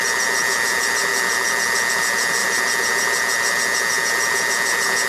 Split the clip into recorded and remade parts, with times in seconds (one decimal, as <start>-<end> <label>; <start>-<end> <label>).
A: 0.0-5.1 recorded